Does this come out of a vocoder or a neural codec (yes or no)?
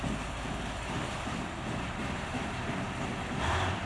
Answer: no